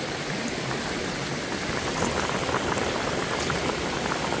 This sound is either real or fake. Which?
real